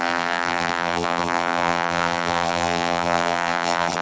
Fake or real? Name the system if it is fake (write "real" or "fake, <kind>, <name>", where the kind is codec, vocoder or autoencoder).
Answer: fake, vocoder, BigVGAN v2